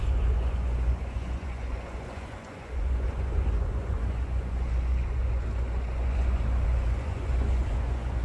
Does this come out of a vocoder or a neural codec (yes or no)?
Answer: yes